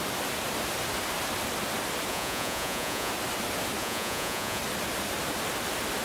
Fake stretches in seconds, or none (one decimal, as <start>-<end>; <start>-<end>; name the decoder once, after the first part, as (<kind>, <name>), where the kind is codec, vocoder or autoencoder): 2.1-3.1 (vocoder, Vocos); 3.8-4.6